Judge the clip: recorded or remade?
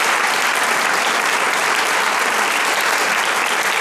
recorded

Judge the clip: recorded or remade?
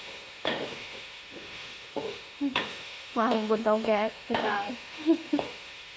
remade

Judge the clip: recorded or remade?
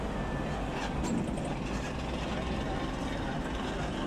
recorded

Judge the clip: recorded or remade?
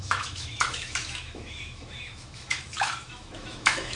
remade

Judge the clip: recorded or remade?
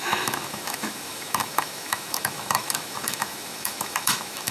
remade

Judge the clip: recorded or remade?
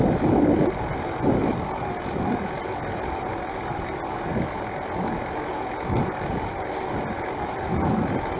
recorded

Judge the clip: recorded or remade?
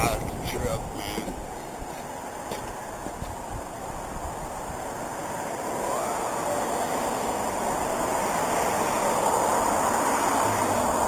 recorded